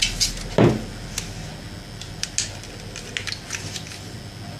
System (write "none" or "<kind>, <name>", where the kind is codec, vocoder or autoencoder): none